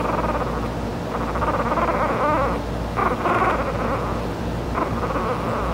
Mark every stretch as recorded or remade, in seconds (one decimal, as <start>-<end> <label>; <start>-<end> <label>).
0.0-3.0 recorded; 3.0-5.2 remade; 5.2-5.7 recorded